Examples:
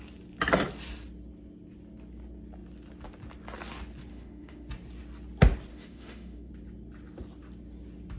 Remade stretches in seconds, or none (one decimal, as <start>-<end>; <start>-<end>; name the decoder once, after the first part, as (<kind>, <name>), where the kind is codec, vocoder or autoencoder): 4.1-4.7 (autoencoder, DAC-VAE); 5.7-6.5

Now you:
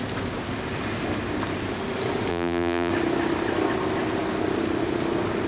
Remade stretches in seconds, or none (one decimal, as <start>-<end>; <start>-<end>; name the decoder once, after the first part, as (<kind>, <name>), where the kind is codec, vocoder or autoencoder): 2.3-2.9 (vocoder, BigVGAN v2)

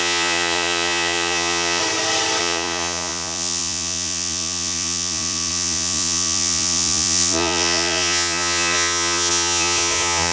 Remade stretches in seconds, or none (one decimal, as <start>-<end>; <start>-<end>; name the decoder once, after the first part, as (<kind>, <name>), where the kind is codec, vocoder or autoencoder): 0.0-1.8 (vocoder, Vocos); 2.4-10.3

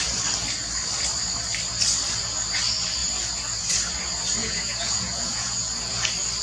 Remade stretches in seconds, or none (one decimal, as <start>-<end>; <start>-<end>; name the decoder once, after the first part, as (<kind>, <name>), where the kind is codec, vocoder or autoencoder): 4.4-6.0 (vocoder, Vocos)

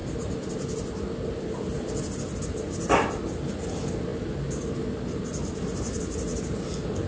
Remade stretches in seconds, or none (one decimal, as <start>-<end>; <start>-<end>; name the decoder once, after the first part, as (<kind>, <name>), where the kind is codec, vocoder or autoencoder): none

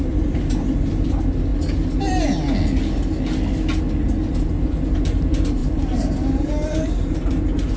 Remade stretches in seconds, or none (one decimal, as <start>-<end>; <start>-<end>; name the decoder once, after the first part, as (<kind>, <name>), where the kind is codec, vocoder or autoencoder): 0.0-1.5 (vocoder, BigVGAN v2); 4.3-7.8

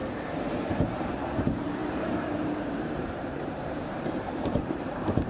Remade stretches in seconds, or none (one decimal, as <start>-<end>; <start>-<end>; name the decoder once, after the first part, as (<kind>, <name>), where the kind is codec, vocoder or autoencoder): 0.0-5.3 (vocoder, BigVGAN v2)